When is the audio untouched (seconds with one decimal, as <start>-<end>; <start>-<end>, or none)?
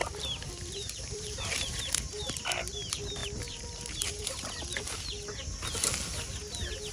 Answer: 2.6-3.2; 4.8-6.9